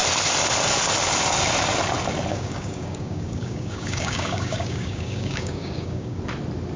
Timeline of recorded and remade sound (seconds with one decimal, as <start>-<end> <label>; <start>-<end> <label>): 0.0-2.3 recorded; 2.3-6.2 remade; 6.2-6.8 recorded